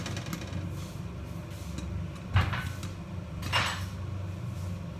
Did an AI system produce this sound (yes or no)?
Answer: no